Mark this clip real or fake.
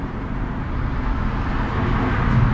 real